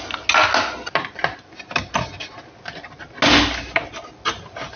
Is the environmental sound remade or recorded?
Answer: recorded